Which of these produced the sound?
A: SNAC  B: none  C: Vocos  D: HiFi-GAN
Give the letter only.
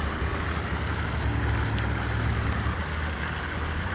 B